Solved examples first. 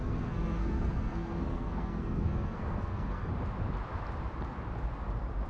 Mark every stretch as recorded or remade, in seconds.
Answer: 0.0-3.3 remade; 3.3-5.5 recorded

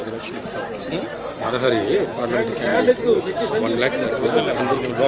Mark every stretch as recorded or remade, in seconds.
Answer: 0.0-2.2 remade; 2.2-2.7 recorded; 2.7-3.2 remade; 3.2-5.1 recorded